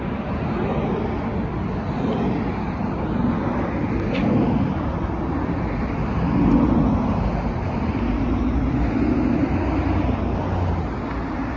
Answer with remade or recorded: recorded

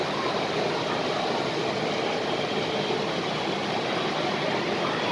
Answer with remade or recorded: recorded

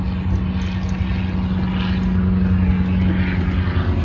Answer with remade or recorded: recorded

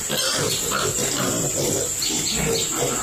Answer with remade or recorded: recorded